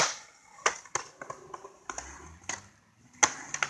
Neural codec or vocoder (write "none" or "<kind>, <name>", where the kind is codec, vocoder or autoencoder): none